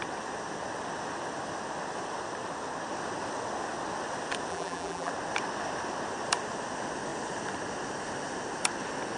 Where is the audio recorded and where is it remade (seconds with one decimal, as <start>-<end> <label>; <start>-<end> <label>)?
0.0-4.5 recorded; 4.5-5.1 remade; 5.1-9.2 recorded

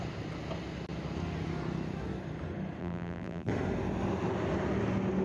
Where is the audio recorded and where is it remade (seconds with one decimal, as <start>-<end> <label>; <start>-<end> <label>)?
0.0-2.8 recorded; 2.8-3.5 remade; 3.5-5.2 recorded

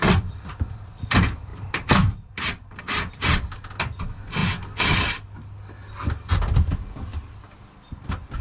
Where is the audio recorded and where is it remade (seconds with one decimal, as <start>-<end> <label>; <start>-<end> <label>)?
0.0-1.5 remade; 1.5-2.8 recorded; 2.8-4.4 remade; 4.4-7.9 recorded; 7.9-8.4 remade

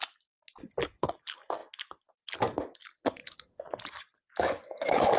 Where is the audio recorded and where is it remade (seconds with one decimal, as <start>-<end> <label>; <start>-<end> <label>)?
0.0-5.2 recorded

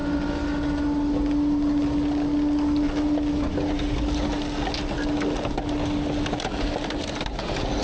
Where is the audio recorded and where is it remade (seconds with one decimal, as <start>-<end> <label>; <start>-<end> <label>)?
0.0-7.8 recorded

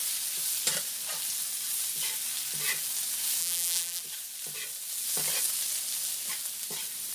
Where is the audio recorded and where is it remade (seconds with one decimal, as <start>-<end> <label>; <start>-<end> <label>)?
0.0-3.4 recorded; 3.4-4.0 remade; 4.0-7.1 recorded